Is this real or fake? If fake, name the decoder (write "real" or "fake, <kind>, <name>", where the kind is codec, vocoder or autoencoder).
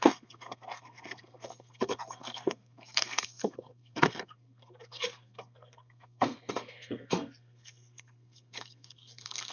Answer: fake, codec, SNAC